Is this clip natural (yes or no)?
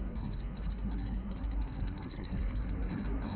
no